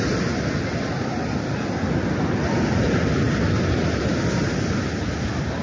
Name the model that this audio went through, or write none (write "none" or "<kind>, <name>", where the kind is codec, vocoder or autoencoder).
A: none